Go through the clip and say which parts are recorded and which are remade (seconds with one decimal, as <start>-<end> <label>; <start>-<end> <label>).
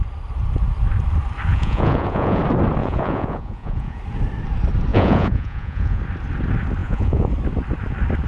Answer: 0.0-1.5 recorded; 1.5-2.4 remade; 2.4-2.8 recorded; 2.8-4.0 remade; 4.0-4.9 recorded; 4.9-6.0 remade; 6.0-6.8 recorded; 6.8-7.3 remade; 7.3-8.3 recorded